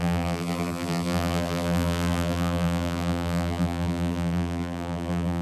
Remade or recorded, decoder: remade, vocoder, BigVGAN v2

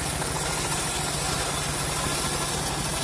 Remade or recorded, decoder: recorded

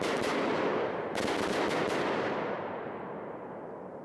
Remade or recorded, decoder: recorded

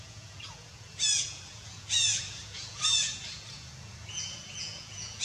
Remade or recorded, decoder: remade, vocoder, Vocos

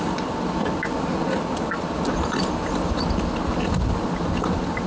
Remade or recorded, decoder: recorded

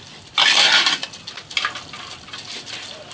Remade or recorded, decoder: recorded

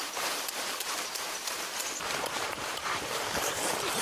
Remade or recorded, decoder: remade, vocoder, BigVGAN v2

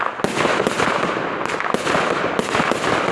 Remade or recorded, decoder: recorded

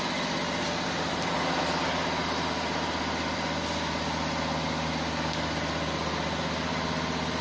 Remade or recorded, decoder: recorded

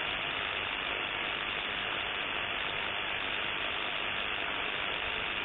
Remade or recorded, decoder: recorded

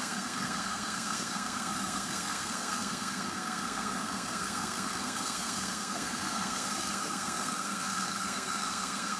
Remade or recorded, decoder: remade, codec, SNAC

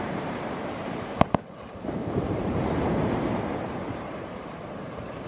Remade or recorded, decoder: remade, vocoder, BigVGAN v2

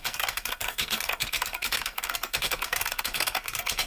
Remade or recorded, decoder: remade, codec, SNAC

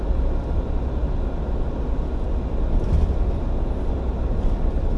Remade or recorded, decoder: recorded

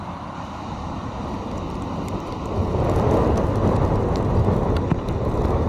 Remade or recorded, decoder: recorded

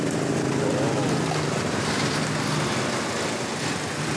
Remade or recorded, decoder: recorded